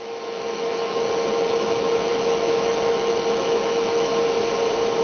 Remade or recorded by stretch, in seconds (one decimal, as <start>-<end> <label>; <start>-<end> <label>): 0.0-4.1 remade; 4.1-5.0 recorded